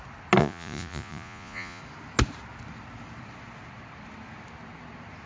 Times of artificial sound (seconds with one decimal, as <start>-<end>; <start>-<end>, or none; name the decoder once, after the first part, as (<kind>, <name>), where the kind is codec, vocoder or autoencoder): 0.4-1.8 (vocoder, Vocos)